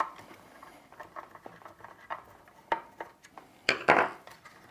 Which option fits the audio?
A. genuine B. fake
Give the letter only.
B